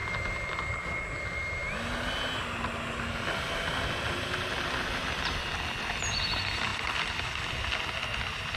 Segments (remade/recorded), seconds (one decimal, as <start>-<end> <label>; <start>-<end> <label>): 0.0-6.7 recorded; 6.7-7.7 remade; 7.7-8.6 recorded